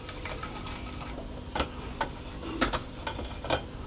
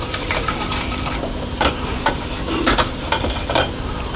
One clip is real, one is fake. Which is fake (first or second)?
second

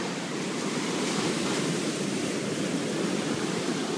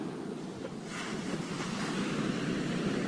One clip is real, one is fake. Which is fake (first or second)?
first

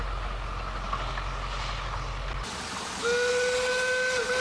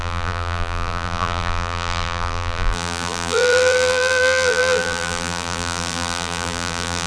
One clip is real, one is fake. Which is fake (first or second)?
second